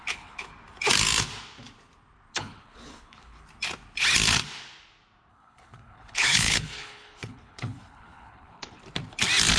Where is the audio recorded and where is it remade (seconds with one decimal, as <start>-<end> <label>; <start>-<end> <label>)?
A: 0.0-0.5 remade; 0.5-2.3 recorded; 2.3-3.4 remade; 3.4-5.3 recorded; 5.3-8.8 remade; 8.8-9.6 recorded